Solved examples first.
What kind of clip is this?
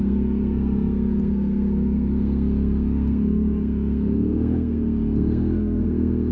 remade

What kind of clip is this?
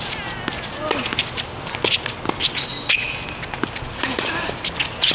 recorded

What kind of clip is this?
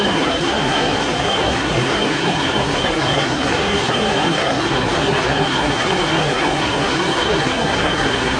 remade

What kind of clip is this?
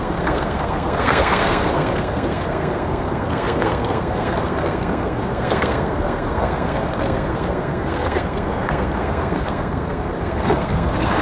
remade